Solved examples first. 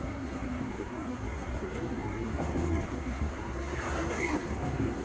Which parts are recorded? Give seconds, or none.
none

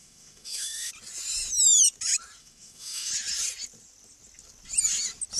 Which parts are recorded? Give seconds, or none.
0.9-2.4; 3.1-5.4

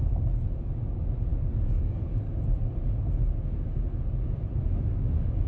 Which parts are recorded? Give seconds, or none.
0.0-1.3; 2.3-5.5

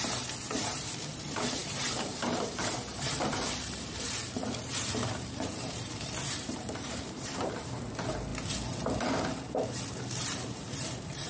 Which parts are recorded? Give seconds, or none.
8.3-9.0

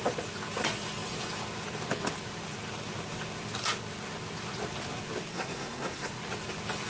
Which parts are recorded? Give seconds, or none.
0.0-5.3; 6.1-6.9

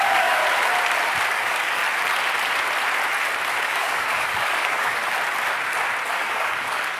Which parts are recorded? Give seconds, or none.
0.4-1.3; 1.8-3.6; 5.0-6.1

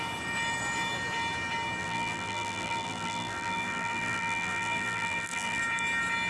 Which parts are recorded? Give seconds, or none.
0.0-1.8; 5.6-6.3

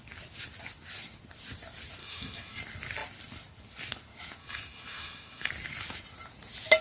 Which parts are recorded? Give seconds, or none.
0.0-2.0; 2.6-4.4; 5.5-6.8